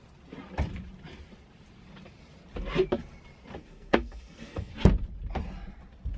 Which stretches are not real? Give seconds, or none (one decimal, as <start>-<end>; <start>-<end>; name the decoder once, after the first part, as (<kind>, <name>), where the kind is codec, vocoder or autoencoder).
3.6-4.7 (codec, SNAC)